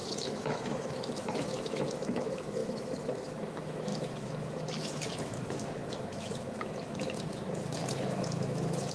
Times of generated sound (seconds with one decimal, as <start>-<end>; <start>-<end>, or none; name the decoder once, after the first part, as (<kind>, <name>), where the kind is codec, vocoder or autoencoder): 0.0-8.9 (autoencoder, DAC-VAE)

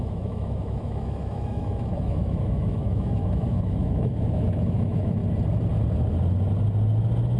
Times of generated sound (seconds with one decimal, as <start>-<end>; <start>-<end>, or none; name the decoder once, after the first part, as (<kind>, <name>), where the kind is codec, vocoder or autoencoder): 0.0-5.2 (autoencoder, DAC-VAE)

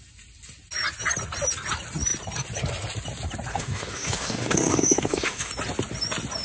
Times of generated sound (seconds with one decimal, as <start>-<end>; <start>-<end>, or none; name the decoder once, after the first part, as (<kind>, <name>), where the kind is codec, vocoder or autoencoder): 3.5-5.5 (autoencoder, DAC-VAE)

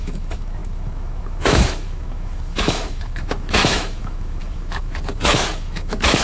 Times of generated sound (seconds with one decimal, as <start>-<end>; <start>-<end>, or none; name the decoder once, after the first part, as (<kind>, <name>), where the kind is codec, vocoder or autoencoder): 0.0-6.2 (autoencoder, DAC-VAE)

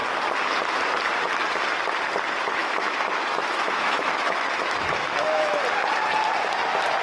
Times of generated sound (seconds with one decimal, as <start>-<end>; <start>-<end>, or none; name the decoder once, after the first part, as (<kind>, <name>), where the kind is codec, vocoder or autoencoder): 2.6-5.6 (autoencoder, DAC-VAE)

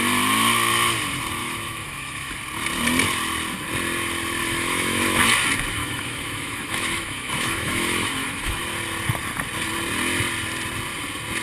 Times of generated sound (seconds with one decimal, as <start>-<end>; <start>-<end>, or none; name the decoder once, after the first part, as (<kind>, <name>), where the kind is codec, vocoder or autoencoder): 1.4-2.3 (autoencoder, DAC-VAE); 4.4-5.2; 5.8-8.6